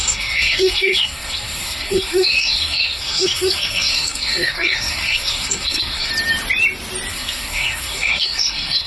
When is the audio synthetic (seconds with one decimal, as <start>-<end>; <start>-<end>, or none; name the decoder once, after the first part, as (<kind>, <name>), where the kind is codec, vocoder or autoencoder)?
0.0-6.1 (codec, SNAC); 7.1-8.9